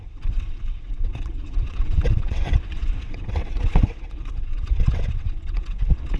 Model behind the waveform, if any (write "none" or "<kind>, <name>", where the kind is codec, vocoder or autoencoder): vocoder, WaveNeXt